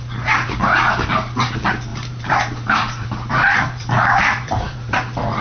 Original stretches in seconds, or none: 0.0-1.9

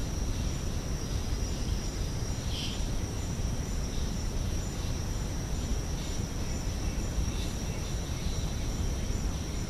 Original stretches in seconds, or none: 0.0-1.5; 5.7-7.7

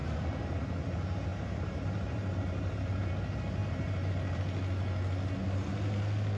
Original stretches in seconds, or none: 0.6-1.3; 3.1-3.6; 4.4-6.4

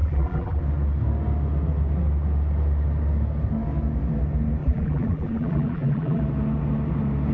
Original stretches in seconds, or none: 0.6-4.6; 6.2-7.3

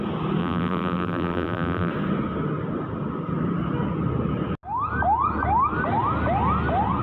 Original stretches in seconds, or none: 0.0-0.4; 1.9-7.0